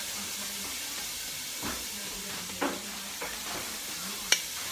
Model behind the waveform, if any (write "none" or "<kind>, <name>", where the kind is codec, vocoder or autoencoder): none